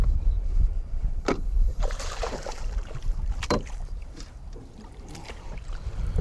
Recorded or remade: remade